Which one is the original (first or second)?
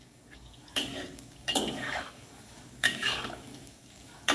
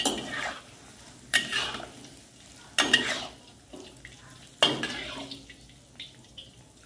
second